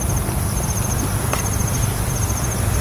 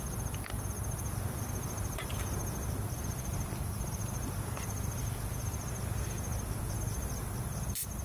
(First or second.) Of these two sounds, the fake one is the second